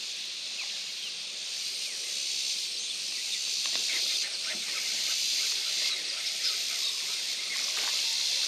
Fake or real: real